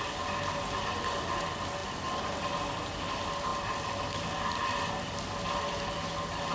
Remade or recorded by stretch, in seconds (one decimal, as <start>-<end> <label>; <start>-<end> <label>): 0.0-6.5 recorded

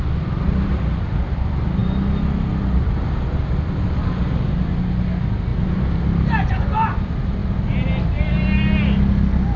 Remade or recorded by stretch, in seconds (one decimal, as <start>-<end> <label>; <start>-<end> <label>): 0.0-9.6 recorded

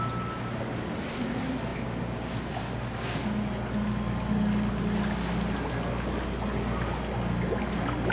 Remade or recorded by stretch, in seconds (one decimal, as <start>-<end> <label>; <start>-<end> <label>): 0.0-8.1 recorded

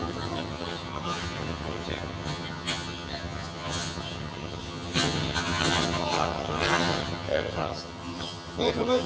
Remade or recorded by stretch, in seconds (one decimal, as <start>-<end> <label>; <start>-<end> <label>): 0.0-9.1 remade

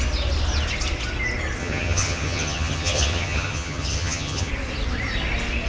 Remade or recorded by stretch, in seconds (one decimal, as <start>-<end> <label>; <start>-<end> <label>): 0.0-1.6 recorded; 1.6-4.5 remade; 4.5-5.7 recorded